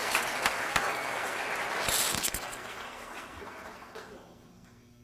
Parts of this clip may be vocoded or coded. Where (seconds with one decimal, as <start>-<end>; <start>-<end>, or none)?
0.0-1.4; 2.1-5.0